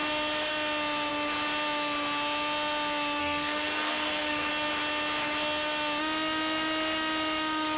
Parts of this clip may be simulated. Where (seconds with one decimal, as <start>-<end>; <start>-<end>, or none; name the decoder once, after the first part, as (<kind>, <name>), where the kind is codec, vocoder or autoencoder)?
3.2-4.5 (codec, SNAC)